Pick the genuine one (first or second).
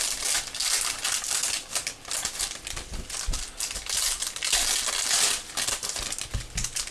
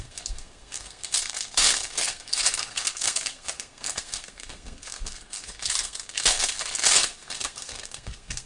first